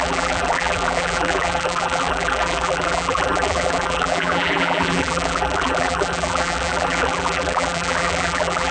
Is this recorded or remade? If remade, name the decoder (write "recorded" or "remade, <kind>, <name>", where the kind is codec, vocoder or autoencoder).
remade, vocoder, BigVGAN v2